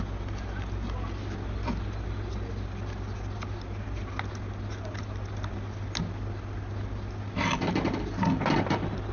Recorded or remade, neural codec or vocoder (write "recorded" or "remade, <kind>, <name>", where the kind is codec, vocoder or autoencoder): recorded